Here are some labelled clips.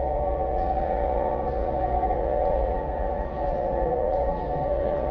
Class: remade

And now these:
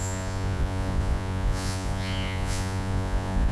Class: remade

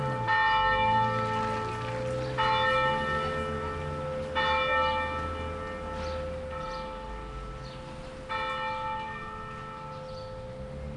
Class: recorded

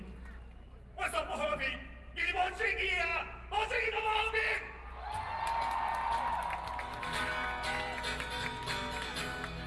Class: recorded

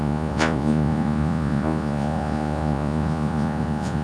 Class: remade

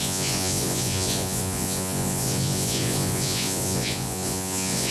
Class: remade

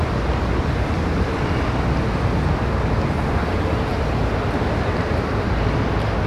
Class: recorded